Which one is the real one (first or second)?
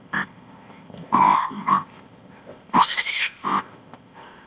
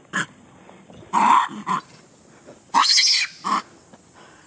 second